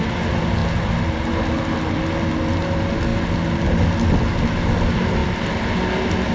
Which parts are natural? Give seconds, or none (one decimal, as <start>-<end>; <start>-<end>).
0.0-6.3